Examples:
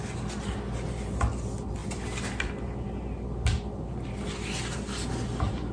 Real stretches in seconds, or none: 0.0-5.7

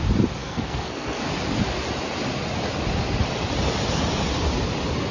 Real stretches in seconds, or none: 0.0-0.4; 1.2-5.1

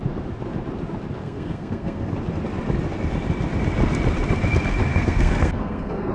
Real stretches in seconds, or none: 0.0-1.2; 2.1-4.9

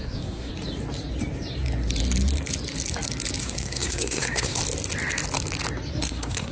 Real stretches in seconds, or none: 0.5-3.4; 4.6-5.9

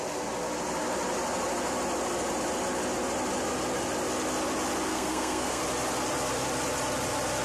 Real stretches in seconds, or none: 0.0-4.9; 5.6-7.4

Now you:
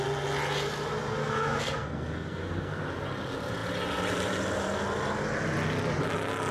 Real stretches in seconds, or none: 0.0-1.2; 2.8-6.5

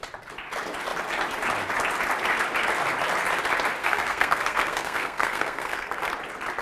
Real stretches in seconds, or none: 0.0-3.8; 6.1-6.6